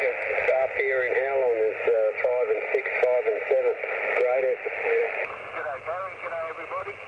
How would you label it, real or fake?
real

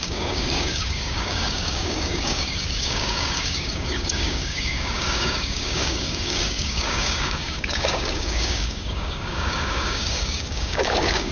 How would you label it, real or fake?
fake